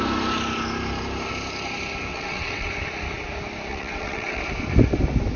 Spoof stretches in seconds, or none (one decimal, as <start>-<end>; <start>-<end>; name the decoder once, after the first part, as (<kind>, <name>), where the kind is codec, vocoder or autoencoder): 2.1-2.7 (vocoder, WaveNeXt); 3.7-4.4